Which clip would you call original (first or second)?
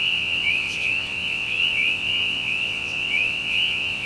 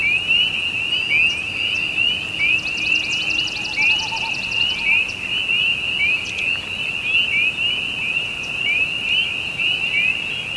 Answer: second